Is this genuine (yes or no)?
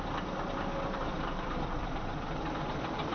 no